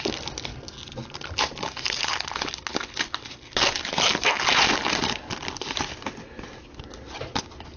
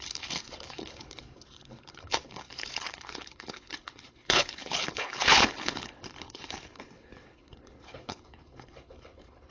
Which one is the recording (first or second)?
first